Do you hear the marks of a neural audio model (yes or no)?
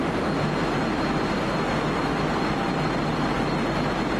no